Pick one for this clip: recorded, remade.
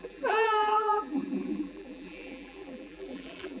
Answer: remade